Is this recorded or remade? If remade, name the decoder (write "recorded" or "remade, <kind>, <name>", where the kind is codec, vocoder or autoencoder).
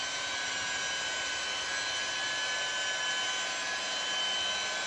recorded